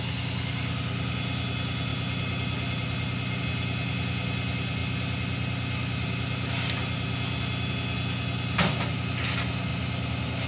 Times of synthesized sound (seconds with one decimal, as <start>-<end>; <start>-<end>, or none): none